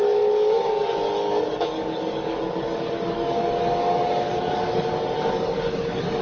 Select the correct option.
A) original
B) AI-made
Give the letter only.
B